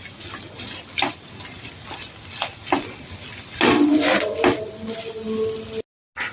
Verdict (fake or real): real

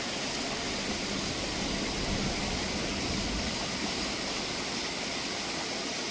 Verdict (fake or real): real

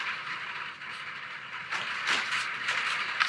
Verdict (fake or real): real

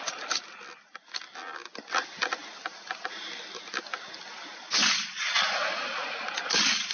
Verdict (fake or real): real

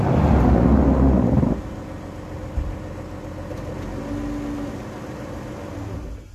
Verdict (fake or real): real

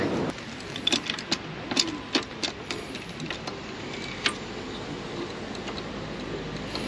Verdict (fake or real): real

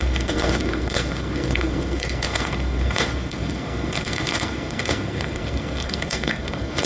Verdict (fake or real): fake